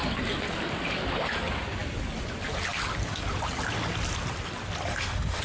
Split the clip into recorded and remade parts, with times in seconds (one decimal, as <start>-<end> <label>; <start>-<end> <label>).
0.0-4.9 recorded; 4.9-5.4 remade